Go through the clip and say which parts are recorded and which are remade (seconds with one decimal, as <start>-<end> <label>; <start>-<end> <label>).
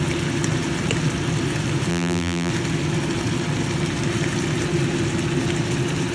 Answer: 0.0-1.9 recorded; 1.9-2.5 remade; 2.5-6.1 recorded